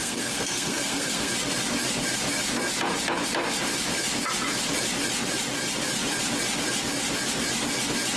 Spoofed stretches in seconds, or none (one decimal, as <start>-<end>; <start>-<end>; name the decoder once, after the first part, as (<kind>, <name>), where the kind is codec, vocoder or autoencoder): 0.0-1.3 (codec, SNAC)